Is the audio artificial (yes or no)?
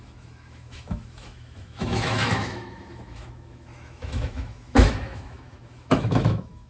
yes